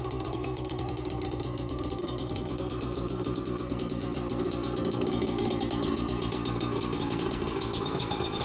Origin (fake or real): fake